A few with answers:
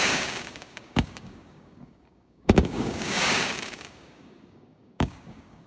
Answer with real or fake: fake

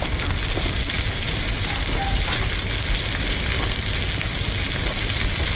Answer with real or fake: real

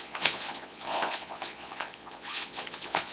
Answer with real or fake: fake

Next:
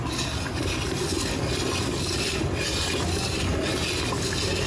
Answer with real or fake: real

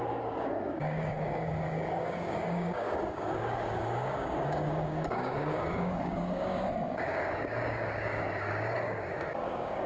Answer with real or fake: fake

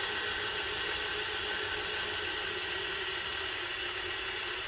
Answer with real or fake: real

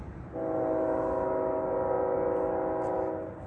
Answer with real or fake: real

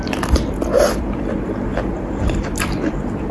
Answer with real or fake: fake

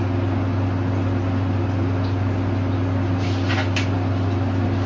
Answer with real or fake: real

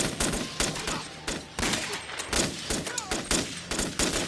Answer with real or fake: real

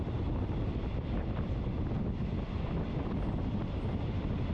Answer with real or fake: real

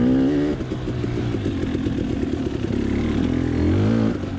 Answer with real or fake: real